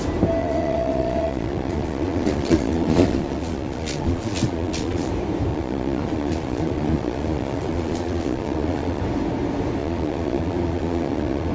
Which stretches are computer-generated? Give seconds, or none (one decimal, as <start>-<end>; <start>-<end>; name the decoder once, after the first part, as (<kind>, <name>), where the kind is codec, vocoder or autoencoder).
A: 0.4-5.1 (vocoder, Vocos); 5.5-9.0; 9.8-11.5